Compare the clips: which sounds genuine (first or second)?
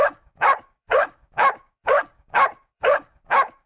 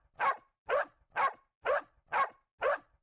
second